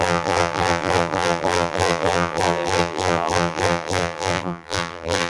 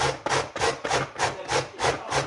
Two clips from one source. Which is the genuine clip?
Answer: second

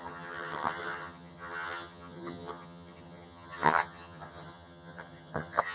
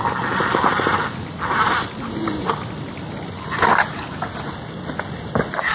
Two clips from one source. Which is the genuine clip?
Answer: second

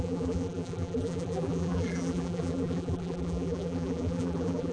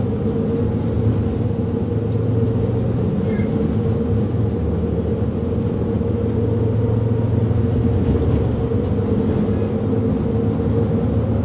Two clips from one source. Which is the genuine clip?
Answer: second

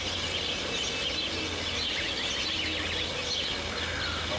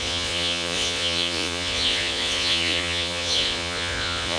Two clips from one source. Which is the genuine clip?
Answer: first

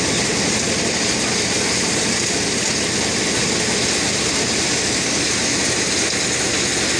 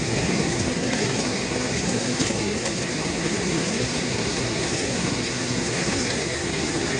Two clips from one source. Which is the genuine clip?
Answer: first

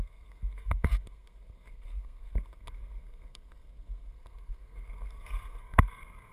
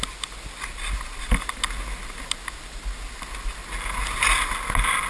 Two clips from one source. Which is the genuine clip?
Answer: second